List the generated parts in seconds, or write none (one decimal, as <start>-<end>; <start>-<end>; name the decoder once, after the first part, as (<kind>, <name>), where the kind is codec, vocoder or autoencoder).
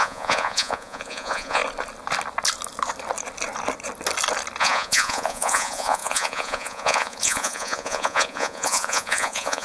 0.0-1.6 (vocoder, Vocos); 4.6-9.6